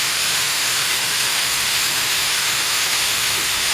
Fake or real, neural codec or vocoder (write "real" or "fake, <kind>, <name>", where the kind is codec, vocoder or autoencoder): fake, autoencoder, DAC-VAE